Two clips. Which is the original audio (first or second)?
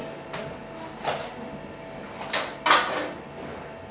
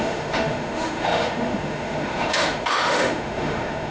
first